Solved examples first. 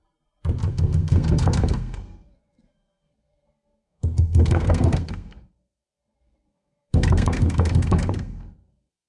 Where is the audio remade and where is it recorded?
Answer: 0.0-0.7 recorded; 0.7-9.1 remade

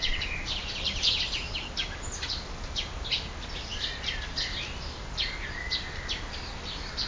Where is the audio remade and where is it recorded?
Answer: 0.0-0.6 recorded; 0.6-1.1 remade; 1.1-7.1 recorded

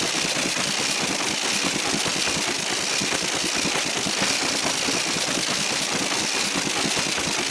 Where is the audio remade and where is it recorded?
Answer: 0.0-7.5 recorded